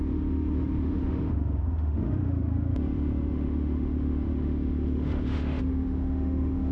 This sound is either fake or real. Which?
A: fake